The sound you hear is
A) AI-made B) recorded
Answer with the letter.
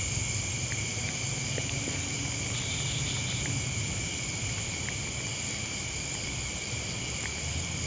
B